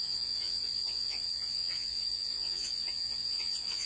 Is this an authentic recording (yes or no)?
no